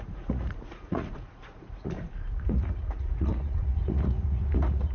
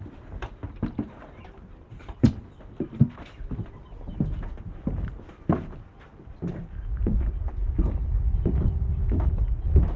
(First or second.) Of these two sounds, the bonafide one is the second